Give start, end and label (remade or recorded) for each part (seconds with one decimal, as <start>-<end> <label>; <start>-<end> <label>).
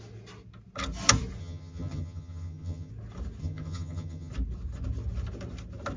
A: 0.0-1.4 recorded; 1.4-2.9 remade; 2.9-3.4 recorded; 3.4-4.3 remade; 4.3-6.0 recorded